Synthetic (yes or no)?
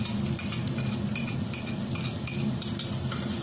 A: no